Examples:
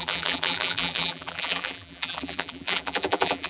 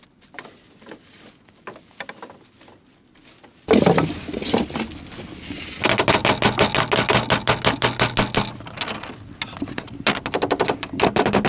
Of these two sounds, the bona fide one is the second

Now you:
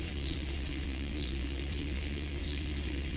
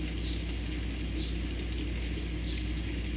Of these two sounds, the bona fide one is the second